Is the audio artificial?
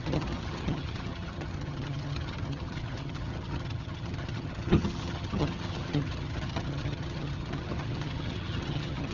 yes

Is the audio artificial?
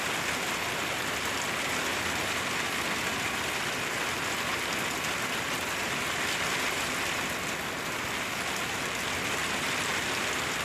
no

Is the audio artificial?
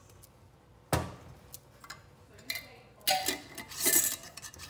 no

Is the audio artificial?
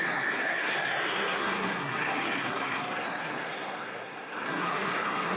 yes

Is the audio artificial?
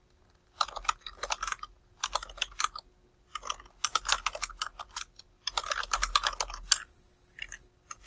no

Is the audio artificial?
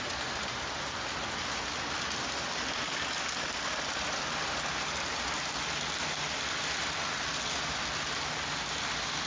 no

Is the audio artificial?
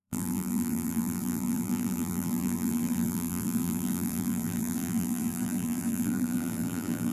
yes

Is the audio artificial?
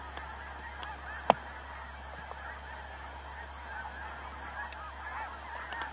no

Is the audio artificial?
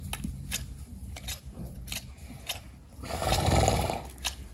no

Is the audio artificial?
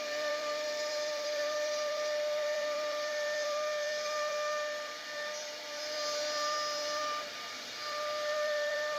yes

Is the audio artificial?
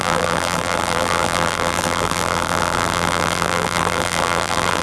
yes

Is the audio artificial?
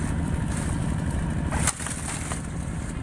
no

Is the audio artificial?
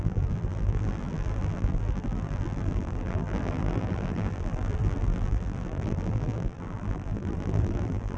yes